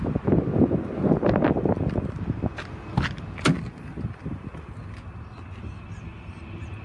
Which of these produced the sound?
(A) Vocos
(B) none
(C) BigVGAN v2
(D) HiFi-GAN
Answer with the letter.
B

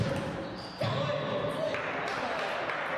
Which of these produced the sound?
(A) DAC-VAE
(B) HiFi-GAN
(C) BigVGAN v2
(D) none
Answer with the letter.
D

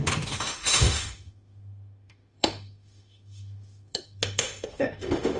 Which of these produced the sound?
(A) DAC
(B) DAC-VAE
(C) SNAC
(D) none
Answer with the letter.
B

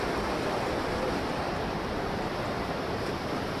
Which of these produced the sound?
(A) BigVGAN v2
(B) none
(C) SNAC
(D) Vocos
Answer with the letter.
A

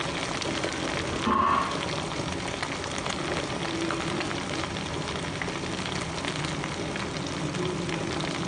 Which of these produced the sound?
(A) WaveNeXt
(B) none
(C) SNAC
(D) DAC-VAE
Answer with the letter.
B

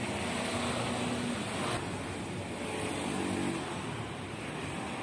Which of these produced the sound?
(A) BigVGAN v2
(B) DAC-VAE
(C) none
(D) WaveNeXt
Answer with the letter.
C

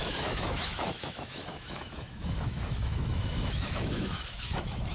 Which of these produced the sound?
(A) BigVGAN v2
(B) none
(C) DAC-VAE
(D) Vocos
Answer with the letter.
C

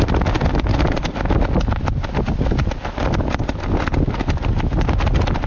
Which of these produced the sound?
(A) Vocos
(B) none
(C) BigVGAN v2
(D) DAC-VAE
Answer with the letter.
B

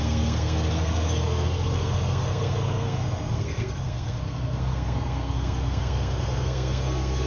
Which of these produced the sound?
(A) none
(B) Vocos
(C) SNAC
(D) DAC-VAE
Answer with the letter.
C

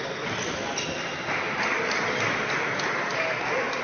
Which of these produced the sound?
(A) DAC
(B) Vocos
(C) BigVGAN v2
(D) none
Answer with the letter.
D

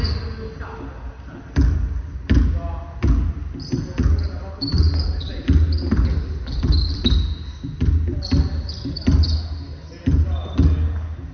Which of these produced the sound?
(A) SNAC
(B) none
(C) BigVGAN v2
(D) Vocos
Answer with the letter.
B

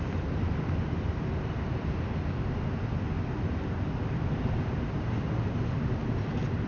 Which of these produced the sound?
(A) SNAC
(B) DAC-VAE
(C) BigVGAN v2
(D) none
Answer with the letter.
D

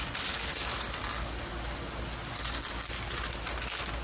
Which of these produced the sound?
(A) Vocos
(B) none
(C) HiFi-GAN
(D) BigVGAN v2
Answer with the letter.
B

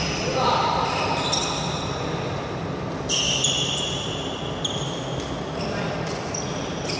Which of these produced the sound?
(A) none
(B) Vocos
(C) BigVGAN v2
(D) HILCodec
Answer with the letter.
A